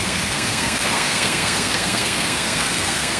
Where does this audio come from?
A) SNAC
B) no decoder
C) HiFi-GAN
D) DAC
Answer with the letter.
A